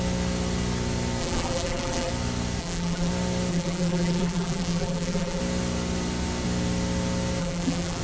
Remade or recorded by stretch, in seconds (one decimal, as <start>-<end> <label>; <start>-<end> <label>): 0.0-1.2 recorded; 1.2-2.1 remade; 2.1-2.6 recorded; 2.6-3.1 remade; 3.1-3.5 recorded; 3.5-5.4 remade; 5.4-7.4 recorded; 7.4-8.0 remade